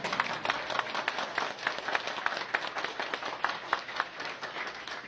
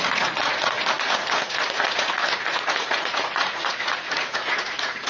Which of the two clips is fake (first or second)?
second